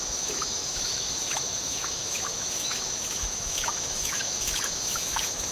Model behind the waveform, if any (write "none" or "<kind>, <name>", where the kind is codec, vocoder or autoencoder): autoencoder, DAC-VAE